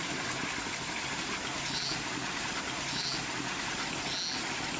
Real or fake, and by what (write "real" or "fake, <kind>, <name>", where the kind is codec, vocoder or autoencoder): real